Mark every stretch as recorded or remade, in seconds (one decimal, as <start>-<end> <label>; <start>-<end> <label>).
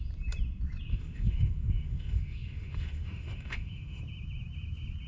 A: 0.0-0.9 recorded; 0.9-4.0 remade; 4.0-5.1 recorded